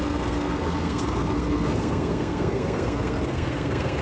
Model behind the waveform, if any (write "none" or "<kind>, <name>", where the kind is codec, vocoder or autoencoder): codec, SNAC